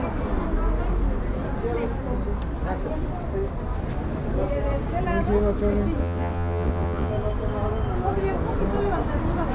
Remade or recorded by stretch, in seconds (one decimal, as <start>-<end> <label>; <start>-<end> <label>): 0.0-6.0 recorded; 6.0-7.1 remade; 7.1-9.5 recorded